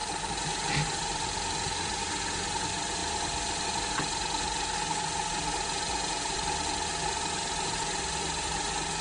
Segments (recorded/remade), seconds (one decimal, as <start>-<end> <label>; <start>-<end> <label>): 0.0-9.0 recorded